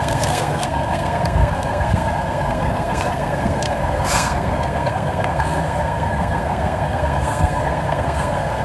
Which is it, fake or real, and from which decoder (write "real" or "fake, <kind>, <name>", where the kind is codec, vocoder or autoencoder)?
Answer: fake, codec, SNAC